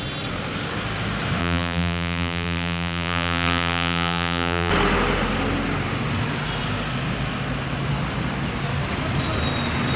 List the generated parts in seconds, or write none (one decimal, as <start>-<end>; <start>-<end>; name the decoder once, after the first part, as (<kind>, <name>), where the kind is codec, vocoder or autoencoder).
1.4-4.7 (vocoder, BigVGAN v2)